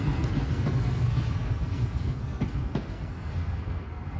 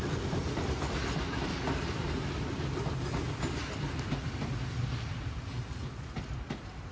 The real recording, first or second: second